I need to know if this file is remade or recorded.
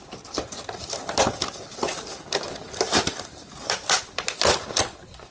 recorded